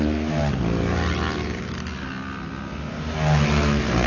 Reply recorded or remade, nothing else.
recorded